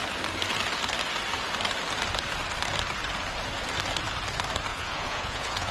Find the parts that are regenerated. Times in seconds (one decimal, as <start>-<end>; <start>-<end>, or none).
4.7-5.7